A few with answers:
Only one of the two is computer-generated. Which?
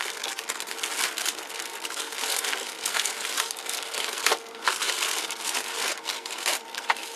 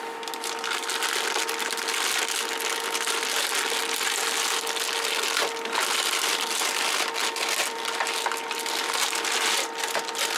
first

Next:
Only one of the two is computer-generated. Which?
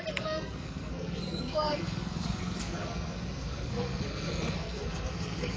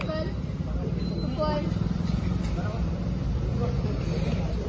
first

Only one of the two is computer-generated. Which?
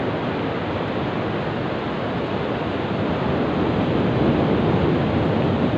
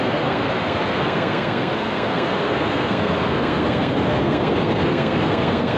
second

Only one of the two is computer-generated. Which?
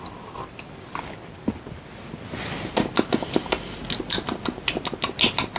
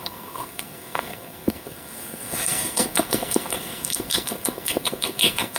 second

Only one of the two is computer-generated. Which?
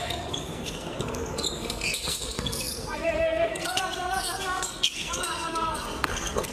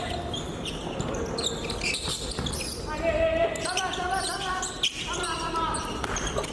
first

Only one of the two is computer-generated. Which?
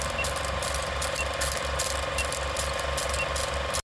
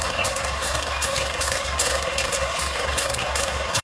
second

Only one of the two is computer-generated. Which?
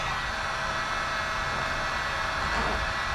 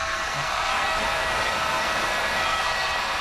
second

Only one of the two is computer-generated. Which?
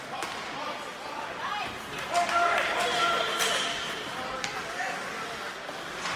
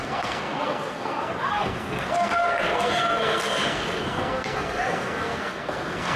second